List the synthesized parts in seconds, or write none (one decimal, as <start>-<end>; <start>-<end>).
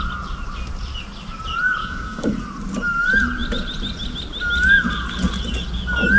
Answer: 1.8-2.3